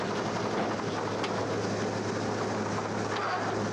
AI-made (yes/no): no